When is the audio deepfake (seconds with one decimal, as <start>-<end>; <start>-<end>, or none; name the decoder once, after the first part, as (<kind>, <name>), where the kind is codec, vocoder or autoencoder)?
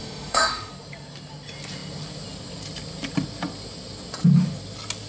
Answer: 0.0-0.7 (autoencoder, DAC-VAE)